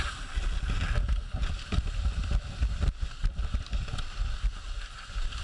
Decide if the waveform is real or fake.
real